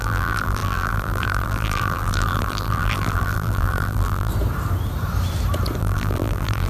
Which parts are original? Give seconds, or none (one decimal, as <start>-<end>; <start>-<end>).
4.3-5.8